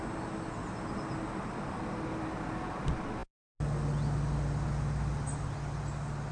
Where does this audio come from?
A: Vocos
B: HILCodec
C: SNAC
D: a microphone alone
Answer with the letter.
D